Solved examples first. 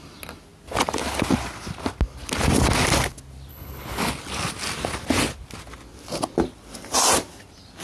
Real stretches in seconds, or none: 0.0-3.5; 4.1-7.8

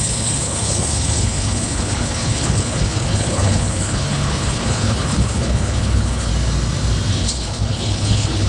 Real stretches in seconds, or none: 6.3-7.1

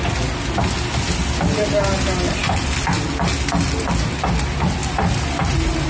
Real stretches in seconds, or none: 0.0-5.9

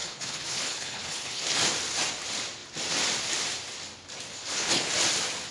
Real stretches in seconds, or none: 1.6-4.3; 4.9-5.5

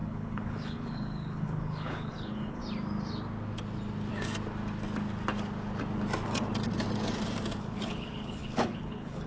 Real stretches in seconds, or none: 2.6-7.6

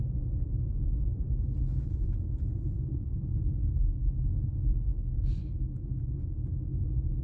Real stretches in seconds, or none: 0.0-2.9; 6.0-7.2

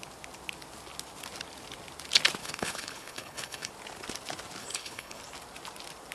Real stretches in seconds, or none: 0.0-2.4; 3.7-4.6; 5.2-6.1

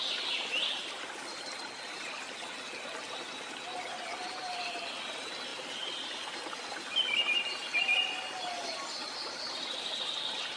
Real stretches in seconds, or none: 0.0-10.6